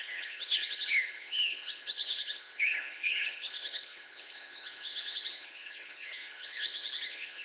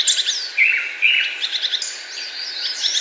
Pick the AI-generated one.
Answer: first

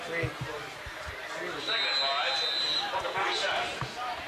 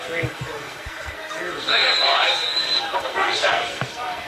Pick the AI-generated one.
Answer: second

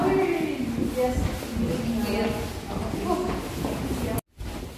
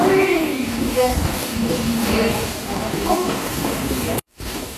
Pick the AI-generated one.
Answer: second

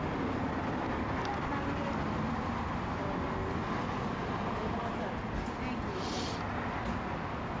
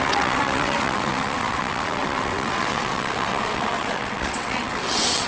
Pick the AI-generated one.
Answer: second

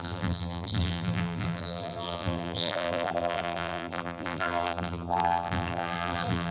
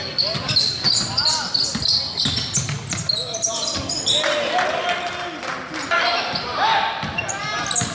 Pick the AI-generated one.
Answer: first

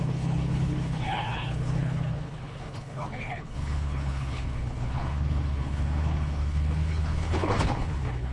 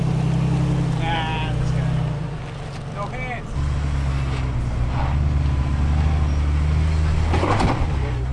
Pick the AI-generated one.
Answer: first